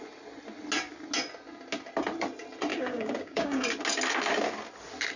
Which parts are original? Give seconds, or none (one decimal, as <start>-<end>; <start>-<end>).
0.0-2.7; 3.6-5.2